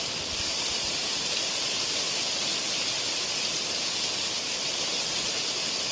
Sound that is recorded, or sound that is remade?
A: recorded